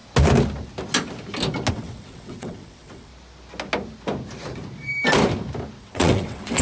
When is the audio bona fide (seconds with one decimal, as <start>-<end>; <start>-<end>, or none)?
0.0-1.7; 3.1-5.8